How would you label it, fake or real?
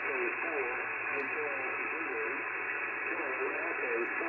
real